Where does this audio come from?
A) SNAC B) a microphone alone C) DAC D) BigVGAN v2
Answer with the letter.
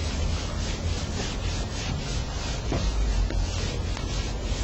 B